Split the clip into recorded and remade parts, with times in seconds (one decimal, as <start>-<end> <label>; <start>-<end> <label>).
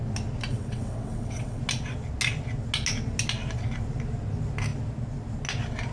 0.0-0.5 recorded; 0.5-1.6 remade; 1.6-5.9 recorded